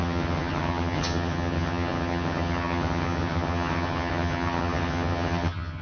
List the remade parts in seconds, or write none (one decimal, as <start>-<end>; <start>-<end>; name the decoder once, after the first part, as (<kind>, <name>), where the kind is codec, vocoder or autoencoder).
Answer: 0.0-5.8 (vocoder, HiFi-GAN)